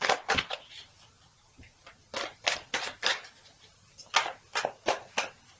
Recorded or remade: recorded